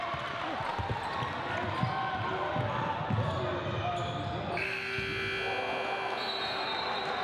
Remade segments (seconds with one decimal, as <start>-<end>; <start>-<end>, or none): none